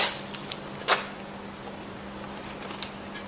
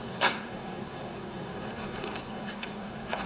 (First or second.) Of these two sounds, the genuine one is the first